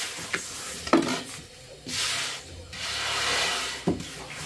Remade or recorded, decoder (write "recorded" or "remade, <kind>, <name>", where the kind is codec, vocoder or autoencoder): recorded